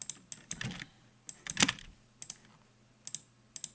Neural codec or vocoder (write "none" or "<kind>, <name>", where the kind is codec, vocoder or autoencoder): none